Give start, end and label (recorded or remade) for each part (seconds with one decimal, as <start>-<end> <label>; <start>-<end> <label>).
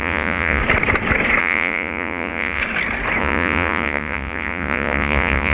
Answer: 0.0-0.6 remade; 0.6-1.4 recorded; 1.4-2.6 remade; 2.6-3.2 recorded; 3.2-5.5 remade